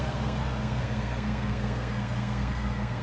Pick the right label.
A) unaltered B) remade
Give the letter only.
B